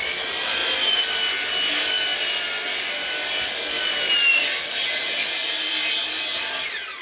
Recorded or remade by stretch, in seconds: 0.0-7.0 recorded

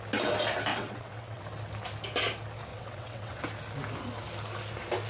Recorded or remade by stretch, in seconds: 0.0-0.7 recorded; 0.7-1.4 remade; 1.4-2.7 recorded; 2.7-3.4 remade; 3.4-5.1 recorded

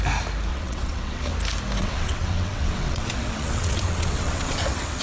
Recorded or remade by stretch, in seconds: 0.0-0.5 recorded; 0.5-1.3 remade; 1.3-1.8 recorded; 1.8-5.0 remade